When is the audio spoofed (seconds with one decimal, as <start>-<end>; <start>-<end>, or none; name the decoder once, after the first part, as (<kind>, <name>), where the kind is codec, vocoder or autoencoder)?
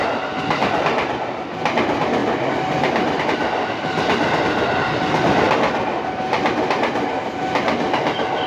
2.2-3.2 (vocoder, BigVGAN v2)